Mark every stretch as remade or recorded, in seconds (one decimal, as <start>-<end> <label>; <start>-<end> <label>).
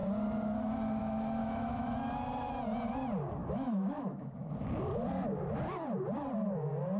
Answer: 0.0-1.4 recorded; 1.4-1.9 remade; 1.9-3.4 recorded; 3.4-4.5 remade; 4.5-7.0 recorded